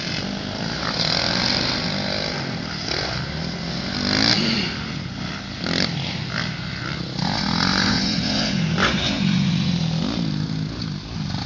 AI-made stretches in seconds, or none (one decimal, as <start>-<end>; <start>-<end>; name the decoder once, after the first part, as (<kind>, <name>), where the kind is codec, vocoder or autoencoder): 7.7-9.7 (vocoder, Vocos)

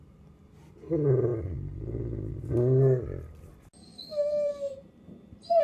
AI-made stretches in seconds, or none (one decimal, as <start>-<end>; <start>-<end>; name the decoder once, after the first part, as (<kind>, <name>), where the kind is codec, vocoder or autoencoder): 3.9-4.5 (autoencoder, DAC-VAE)

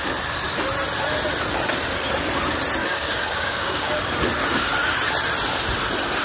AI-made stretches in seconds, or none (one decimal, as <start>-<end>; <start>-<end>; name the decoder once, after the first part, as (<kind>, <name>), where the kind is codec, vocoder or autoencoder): 2.8-3.9 (codec, DAC)

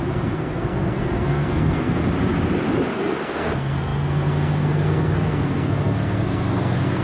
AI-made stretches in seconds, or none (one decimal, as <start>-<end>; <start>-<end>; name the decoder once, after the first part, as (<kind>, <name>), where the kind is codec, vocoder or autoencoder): 0.0-2.0 (codec, SNAC); 2.9-7.0

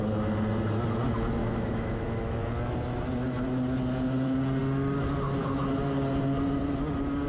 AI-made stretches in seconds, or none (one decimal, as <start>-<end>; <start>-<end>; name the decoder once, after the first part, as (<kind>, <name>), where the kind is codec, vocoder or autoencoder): 1.4-2.5 (autoencoder, DAC-VAE)

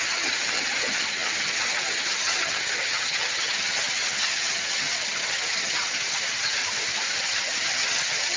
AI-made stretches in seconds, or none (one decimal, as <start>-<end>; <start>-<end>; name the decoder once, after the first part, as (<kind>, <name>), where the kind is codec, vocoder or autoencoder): 0.0-6.6 (vocoder, HiFi-GAN); 7.2-8.4

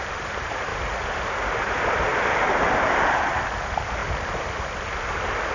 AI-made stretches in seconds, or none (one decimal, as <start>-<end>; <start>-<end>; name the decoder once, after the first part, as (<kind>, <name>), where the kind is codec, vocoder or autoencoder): 0.0-0.7 (vocoder, BigVGAN v2); 1.3-2.1; 3.5-4.0